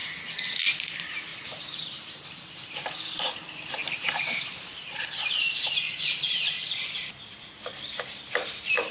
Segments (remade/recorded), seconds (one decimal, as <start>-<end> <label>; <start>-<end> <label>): 0.0-0.6 recorded; 0.6-8.9 remade